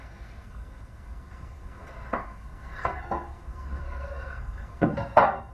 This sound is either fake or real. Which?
fake